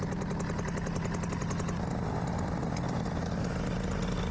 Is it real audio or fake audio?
real